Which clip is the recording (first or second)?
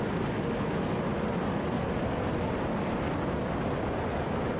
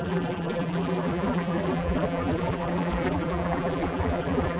first